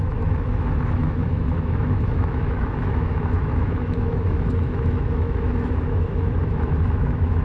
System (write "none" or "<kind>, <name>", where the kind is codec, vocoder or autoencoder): autoencoder, DAC-VAE